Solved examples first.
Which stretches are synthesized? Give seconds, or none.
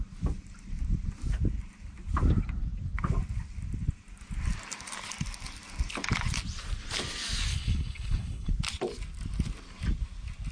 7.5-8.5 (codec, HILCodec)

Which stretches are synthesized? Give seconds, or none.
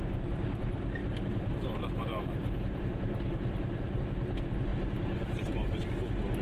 1.0-4.0 (vocoder, BigVGAN v2); 4.7-5.8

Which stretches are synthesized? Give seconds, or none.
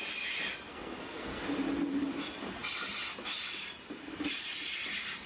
0.7-1.4 (codec, SNAC)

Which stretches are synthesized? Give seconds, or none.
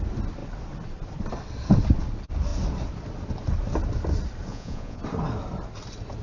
4.5-5.0 (vocoder, Vocos)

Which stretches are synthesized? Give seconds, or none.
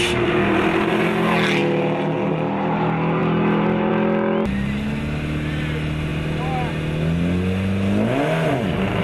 none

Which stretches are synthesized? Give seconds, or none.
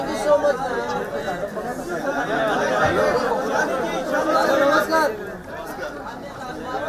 none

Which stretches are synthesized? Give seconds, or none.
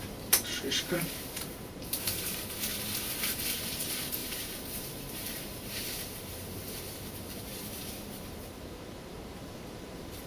0.0-2.7 (vocoder, BigVGAN v2); 3.2-10.3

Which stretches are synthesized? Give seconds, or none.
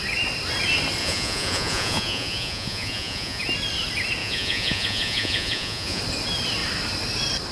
1.0-3.4 (vocoder, Vocos); 4.2-6.0